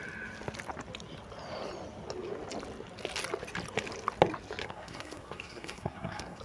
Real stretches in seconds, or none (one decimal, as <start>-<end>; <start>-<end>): 0.0-4.6